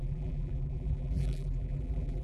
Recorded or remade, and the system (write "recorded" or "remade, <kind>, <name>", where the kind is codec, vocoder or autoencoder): remade, vocoder, BigVGAN v2